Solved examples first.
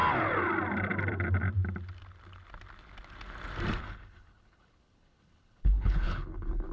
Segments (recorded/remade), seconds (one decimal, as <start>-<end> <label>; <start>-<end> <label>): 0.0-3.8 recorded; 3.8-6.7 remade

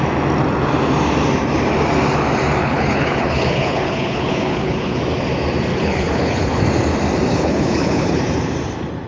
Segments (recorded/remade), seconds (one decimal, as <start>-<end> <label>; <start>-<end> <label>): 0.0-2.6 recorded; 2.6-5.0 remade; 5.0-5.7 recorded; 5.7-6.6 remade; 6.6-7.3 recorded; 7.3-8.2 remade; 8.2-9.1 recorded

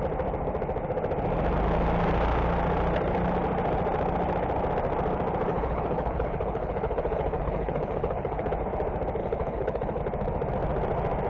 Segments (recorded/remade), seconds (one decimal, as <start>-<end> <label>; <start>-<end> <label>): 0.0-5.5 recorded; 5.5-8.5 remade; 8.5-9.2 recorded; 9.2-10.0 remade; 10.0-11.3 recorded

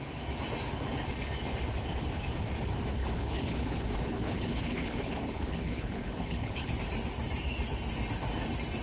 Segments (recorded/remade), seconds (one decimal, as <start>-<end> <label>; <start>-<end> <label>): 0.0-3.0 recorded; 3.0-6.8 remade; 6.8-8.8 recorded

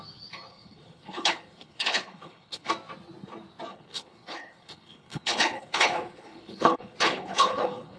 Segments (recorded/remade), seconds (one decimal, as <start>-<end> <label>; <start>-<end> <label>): 0.0-0.5 recorded; 0.5-2.7 remade; 2.7-3.7 recorded; 3.7-8.0 remade

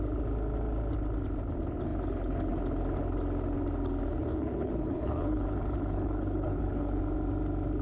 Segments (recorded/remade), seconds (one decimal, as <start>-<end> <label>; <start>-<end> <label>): 0.0-4.3 recorded; 4.3-7.0 remade; 7.0-7.8 recorded